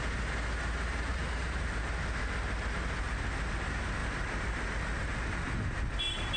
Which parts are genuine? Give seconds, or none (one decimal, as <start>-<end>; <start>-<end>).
0.0-1.1; 1.7-4.0